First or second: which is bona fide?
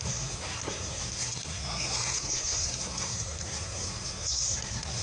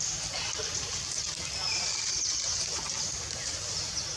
second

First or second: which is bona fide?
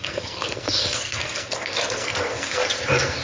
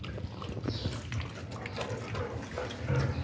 second